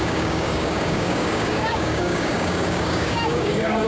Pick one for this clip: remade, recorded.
remade